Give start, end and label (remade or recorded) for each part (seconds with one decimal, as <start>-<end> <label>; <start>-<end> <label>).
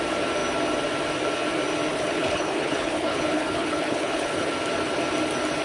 0.0-1.9 recorded; 1.9-4.5 remade; 4.5-5.6 recorded